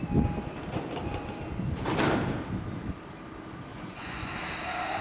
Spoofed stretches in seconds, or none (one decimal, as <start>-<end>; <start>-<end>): 3.7-4.3